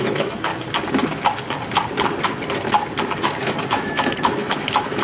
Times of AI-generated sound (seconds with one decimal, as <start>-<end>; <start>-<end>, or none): 0.0-0.5; 3.5-5.0